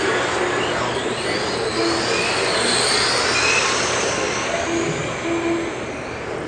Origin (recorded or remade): recorded